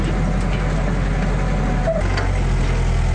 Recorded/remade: recorded